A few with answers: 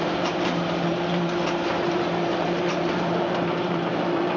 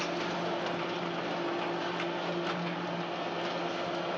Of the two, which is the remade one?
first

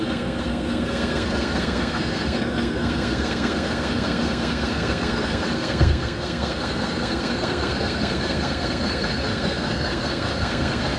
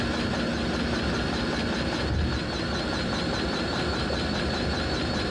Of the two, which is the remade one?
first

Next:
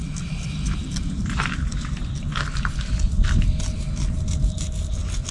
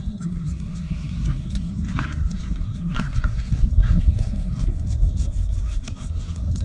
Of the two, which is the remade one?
second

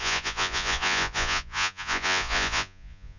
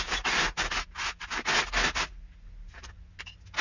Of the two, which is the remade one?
first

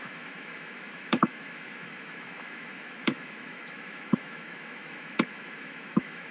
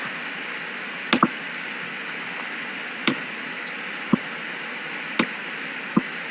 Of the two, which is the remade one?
first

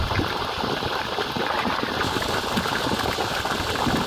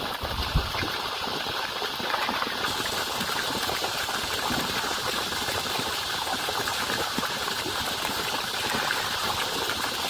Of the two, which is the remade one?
second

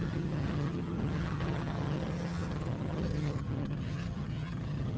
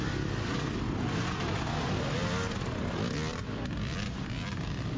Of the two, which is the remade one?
first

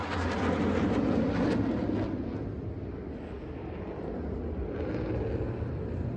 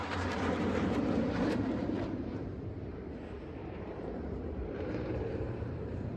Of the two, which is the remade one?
second